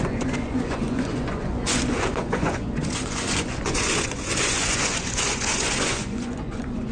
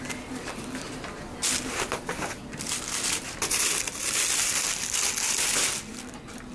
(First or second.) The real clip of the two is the second